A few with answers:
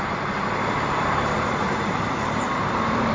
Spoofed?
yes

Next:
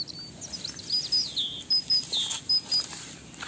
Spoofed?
no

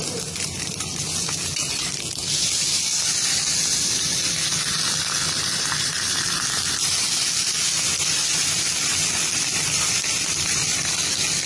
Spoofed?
no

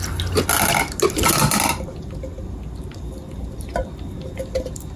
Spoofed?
no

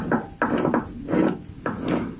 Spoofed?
no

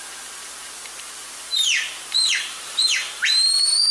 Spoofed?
yes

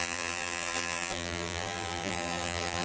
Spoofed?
yes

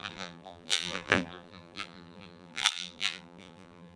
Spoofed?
yes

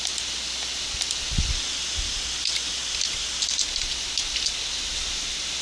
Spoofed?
no